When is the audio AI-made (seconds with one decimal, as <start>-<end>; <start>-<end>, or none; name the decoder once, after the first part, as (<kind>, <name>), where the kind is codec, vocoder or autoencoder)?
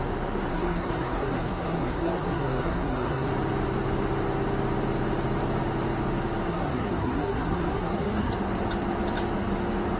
0.5-3.3 (codec, SNAC); 6.5-8.3